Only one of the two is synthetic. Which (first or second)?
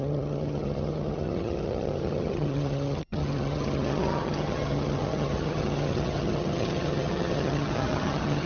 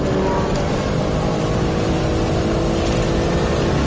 first